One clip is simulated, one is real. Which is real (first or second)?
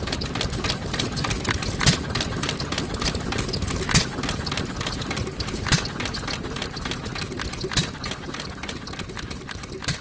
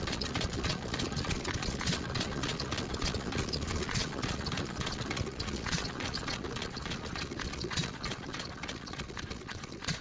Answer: first